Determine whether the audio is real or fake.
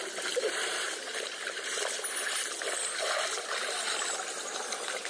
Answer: fake